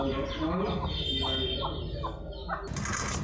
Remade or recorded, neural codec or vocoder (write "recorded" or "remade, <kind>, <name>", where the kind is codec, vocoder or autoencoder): recorded